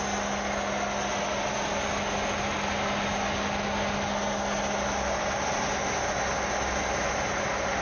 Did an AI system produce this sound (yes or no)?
no